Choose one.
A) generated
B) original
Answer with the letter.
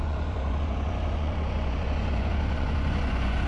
A